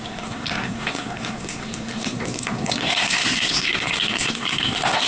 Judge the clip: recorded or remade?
remade